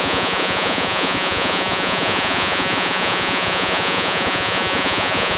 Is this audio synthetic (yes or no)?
yes